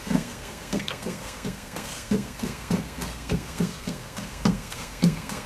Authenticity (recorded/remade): remade